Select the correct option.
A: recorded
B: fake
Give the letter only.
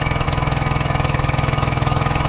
B